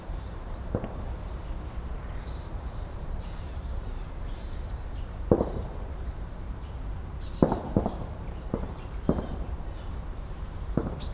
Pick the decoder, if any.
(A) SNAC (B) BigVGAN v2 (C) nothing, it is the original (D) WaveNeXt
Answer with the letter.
B